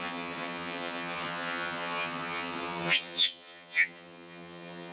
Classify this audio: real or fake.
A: fake